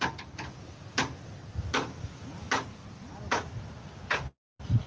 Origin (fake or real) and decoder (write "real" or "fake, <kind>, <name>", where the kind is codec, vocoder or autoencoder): real